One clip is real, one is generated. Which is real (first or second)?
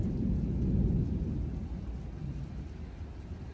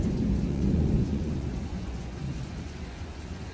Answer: first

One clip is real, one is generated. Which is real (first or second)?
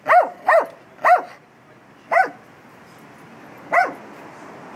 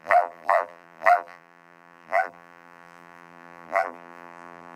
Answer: first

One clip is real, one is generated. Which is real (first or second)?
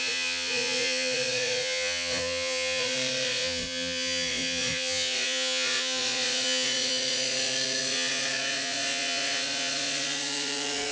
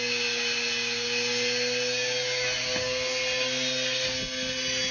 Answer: second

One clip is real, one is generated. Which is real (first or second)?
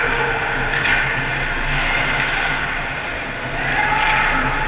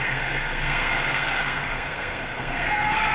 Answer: first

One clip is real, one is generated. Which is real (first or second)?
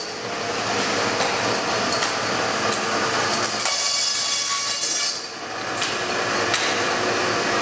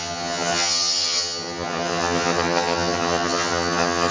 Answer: first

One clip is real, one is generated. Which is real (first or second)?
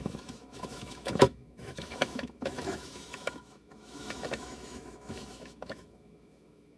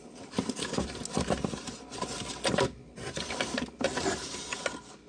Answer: second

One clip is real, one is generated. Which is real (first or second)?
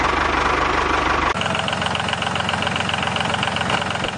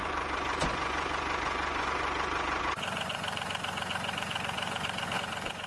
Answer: first